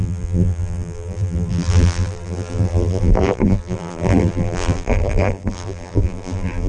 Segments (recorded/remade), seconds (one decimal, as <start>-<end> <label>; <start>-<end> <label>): 0.0-6.7 remade